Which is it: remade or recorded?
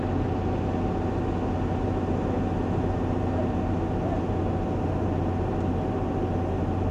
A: recorded